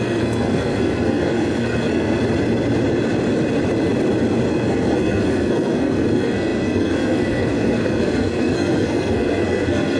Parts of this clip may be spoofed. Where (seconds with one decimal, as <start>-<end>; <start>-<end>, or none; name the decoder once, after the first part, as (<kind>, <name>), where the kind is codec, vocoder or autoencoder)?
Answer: 0.0-2.2 (codec, SNAC); 4.5-10.0